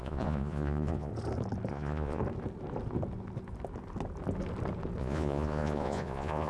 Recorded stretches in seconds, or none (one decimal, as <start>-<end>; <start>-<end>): 1.1-1.7; 2.2-5.0